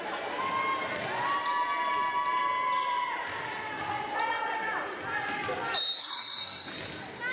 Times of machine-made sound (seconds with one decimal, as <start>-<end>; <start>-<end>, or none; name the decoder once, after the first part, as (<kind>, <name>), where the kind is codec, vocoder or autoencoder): 6.0-6.7 (codec, SNAC)